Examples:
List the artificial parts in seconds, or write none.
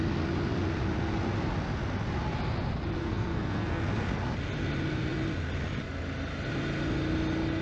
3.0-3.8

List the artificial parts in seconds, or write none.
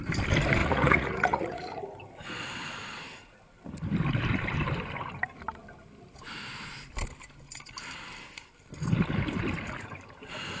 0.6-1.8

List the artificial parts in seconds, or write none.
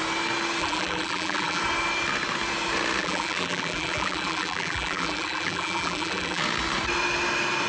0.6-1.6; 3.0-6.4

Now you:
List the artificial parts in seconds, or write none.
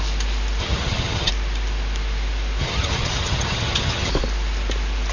0.6-1.3; 2.6-4.1